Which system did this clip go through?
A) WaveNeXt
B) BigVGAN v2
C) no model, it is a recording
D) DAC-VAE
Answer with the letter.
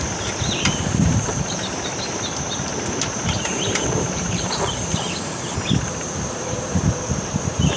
B